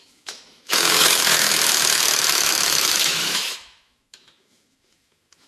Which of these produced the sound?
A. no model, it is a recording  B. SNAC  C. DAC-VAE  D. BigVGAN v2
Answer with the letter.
C